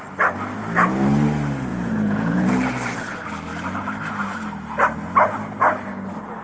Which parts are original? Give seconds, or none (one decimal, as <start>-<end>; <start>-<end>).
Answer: 0.0-1.7; 2.5-6.4